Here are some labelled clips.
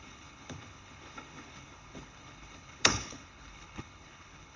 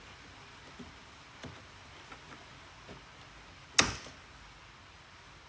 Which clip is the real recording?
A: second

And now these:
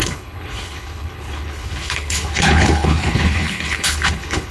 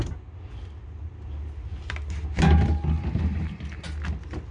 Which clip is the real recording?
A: second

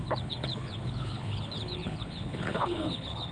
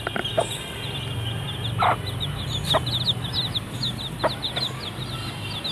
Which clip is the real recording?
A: second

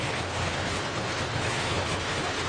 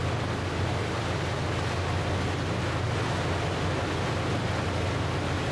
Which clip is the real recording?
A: second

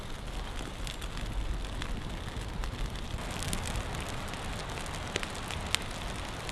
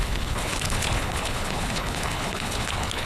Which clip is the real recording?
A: first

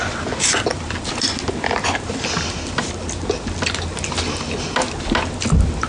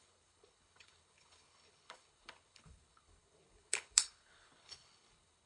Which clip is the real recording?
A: first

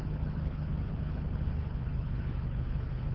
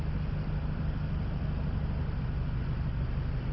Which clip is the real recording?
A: second